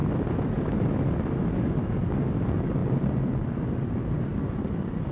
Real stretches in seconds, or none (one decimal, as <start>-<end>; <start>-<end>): 0.0-5.1